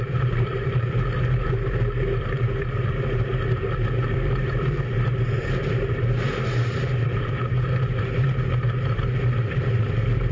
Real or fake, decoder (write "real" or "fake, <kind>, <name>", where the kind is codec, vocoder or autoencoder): fake, vocoder, BigVGAN v2